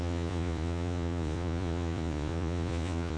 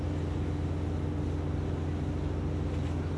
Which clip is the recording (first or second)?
second